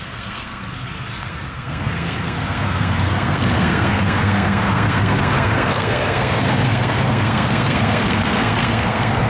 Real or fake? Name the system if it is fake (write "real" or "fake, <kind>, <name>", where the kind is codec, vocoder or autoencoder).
fake, codec, SNAC